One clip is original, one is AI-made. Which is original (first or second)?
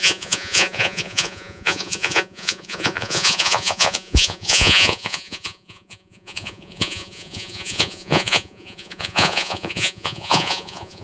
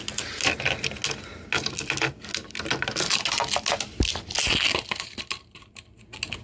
second